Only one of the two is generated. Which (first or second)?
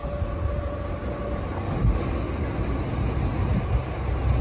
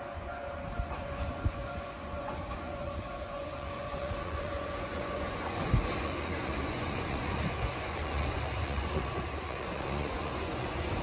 second